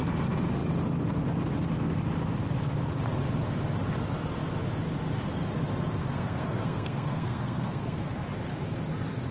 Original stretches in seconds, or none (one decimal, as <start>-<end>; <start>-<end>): 0.0-6.0; 8.0-9.3